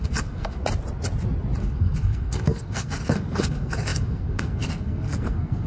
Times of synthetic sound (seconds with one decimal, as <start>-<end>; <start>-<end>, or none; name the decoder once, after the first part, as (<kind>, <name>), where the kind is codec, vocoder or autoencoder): 0.0-0.6 (codec, SNAC); 1.6-5.7